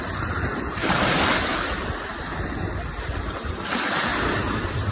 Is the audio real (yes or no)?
yes